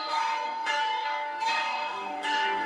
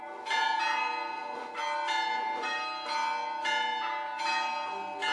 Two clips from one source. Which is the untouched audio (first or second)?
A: second